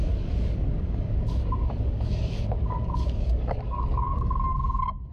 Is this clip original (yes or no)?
no